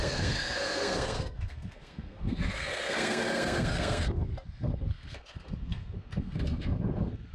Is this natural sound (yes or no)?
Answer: no